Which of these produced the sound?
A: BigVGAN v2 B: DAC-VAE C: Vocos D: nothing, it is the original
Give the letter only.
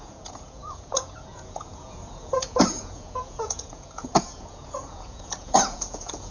C